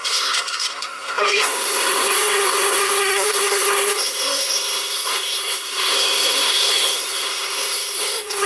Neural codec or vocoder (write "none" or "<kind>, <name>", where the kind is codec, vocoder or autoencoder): codec, SNAC